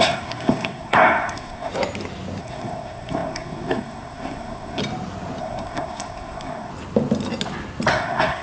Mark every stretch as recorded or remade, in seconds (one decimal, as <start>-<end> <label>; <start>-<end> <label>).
0.0-1.7 remade; 1.7-2.4 recorded; 2.4-4.8 remade; 4.8-5.4 recorded; 5.4-6.7 remade; 6.7-7.9 recorded; 7.9-8.4 remade